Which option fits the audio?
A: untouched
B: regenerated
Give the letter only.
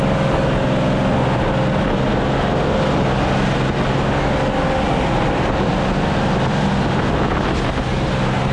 A